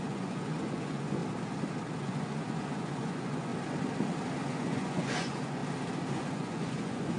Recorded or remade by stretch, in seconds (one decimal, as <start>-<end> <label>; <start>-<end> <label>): 0.0-1.2 remade; 1.2-2.0 recorded; 2.0-3.5 remade; 3.5-4.4 recorded; 4.4-5.6 remade; 5.6-6.1 recorded; 6.1-7.2 remade